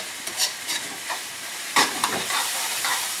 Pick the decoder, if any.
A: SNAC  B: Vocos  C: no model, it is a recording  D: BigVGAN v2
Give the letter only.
D